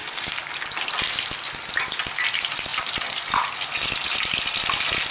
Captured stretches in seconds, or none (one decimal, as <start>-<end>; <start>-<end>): 0.0-5.1